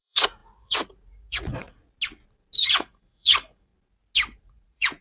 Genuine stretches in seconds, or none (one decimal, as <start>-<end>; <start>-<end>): 1.8-2.6; 3.7-4.4